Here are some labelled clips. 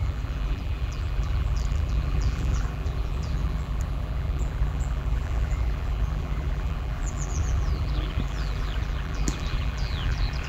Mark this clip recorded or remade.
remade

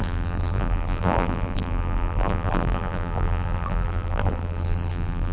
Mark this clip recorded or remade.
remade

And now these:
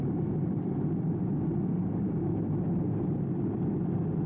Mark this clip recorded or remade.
remade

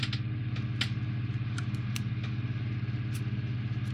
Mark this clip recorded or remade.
recorded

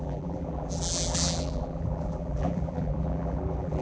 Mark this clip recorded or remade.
remade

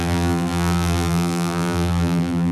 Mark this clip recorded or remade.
remade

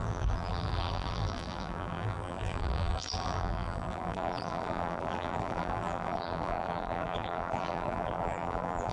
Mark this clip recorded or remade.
remade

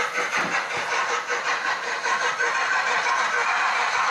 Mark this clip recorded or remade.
remade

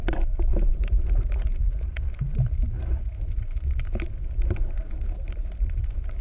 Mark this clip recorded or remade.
remade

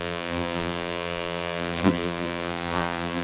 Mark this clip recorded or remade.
remade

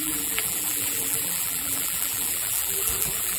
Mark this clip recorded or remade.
remade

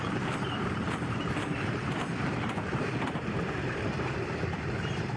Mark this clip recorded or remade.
remade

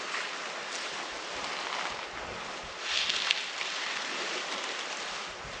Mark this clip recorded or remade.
recorded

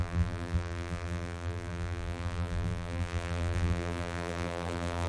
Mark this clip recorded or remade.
remade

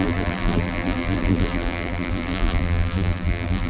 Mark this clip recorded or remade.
remade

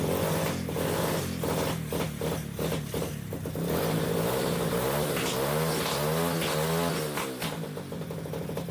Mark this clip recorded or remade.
recorded